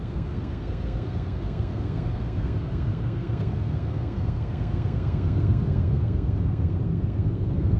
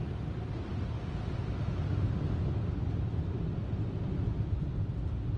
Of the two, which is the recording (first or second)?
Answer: second